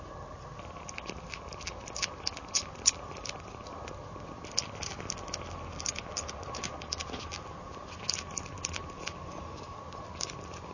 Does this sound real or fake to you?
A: real